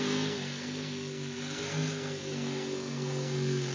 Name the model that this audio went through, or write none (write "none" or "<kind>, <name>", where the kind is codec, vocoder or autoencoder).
codec, SNAC